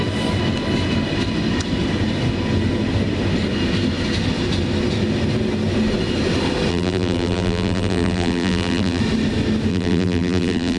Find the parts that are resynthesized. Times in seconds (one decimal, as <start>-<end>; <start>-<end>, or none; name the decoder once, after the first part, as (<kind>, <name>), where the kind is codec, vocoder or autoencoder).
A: 6.7-9.0 (vocoder, BigVGAN v2); 9.7-10.8